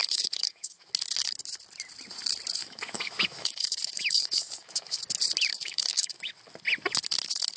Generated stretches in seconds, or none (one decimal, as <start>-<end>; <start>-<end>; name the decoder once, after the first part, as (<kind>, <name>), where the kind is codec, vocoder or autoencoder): 0.0-0.9 (autoencoder, DAC-VAE); 2.6-5.0; 5.5-6.3